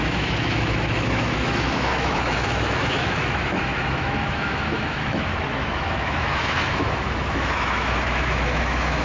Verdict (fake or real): fake